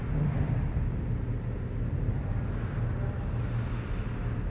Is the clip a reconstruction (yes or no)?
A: no